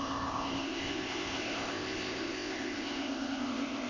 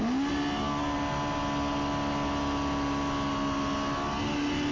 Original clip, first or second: second